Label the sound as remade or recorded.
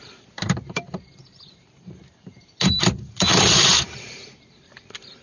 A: remade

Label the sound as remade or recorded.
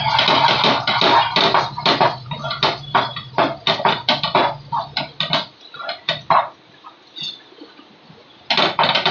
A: recorded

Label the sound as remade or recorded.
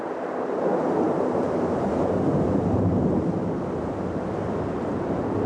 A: remade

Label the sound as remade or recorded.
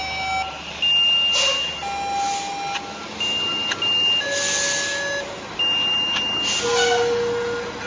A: recorded